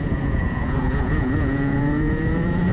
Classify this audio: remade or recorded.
remade